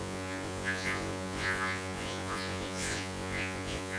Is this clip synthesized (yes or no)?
yes